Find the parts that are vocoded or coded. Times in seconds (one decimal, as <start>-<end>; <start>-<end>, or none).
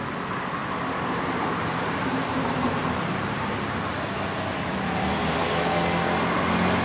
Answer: 0.6-3.5; 4.7-5.4